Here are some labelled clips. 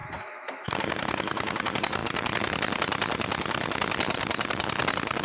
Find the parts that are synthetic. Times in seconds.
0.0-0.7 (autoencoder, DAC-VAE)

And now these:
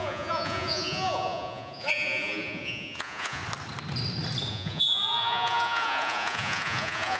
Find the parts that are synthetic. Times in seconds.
0.0-3.4 (vocoder, Vocos); 4.5-7.2

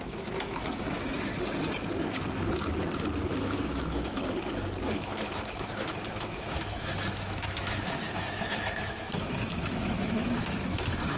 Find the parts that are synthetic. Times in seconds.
0.0-1.3 (autoencoder, DAC-VAE); 3.3-4.1; 5.0-11.2

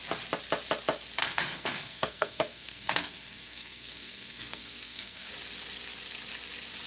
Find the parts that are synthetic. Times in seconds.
1.2-5.3 (codec, SNAC)

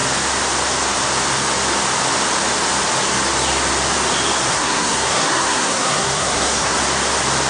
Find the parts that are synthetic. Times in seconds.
4.5-6.8 (codec, SNAC)